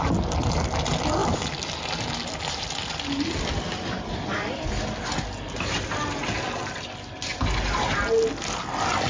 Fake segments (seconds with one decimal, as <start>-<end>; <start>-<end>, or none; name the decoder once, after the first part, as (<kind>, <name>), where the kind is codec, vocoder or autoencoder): none